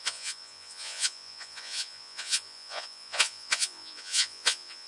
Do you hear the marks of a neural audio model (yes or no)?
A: yes